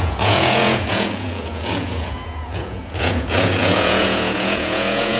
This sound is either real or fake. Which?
fake